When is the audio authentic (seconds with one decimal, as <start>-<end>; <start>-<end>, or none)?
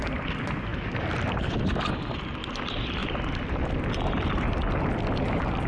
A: 0.0-5.7